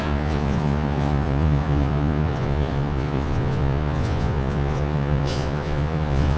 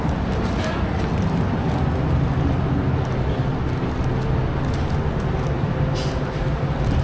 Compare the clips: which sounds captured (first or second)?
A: second